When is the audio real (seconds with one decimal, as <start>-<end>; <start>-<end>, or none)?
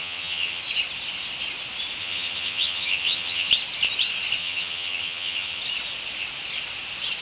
0.6-2.0; 3.5-4.4; 5.6-7.2